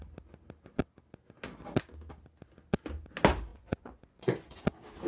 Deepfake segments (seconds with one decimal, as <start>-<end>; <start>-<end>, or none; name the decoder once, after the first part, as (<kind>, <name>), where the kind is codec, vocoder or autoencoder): 3.5-4.6 (vocoder, Vocos)